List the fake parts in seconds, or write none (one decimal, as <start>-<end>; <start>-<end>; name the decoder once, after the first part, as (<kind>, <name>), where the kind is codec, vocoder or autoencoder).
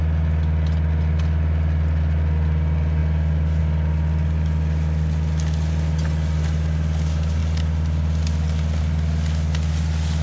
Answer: none